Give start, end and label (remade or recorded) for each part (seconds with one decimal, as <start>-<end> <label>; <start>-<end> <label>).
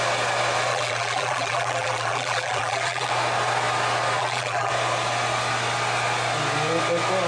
0.0-0.7 recorded; 0.7-3.1 remade; 3.1-4.2 recorded; 4.2-4.7 remade; 4.7-7.3 recorded